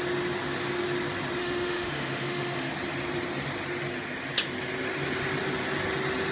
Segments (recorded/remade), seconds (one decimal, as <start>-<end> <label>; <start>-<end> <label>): 0.0-1.4 recorded; 1.4-2.7 remade; 2.7-6.3 recorded